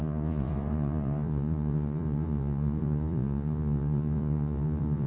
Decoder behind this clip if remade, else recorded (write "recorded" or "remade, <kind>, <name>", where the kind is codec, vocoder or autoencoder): remade, vocoder, Vocos